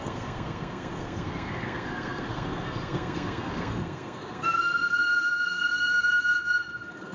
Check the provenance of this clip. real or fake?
fake